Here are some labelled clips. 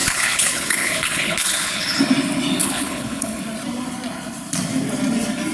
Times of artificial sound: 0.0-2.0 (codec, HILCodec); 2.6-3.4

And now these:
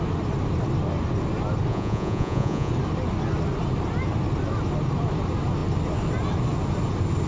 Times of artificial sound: 1.7-2.7 (vocoder, Vocos)

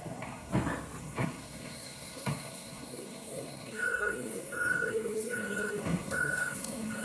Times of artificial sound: 0.0-0.5 (codec, SNAC); 1.0-7.0

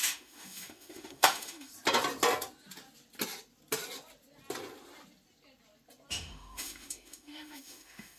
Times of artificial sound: 0.0-1.7 (autoencoder, DAC-VAE); 6.1-8.2

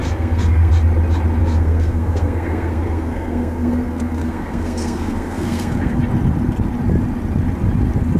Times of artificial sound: 0.0-0.7 (codec, SNAC); 1.4-6.0